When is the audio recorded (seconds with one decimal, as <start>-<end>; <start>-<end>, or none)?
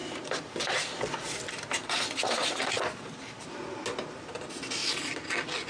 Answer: 0.0-5.7